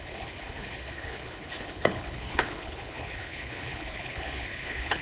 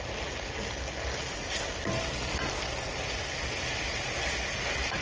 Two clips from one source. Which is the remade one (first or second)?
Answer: first